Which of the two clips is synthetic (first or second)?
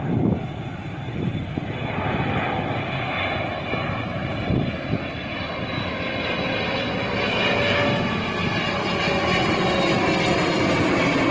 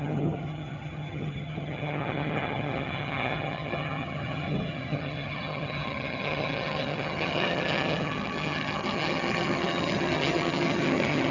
second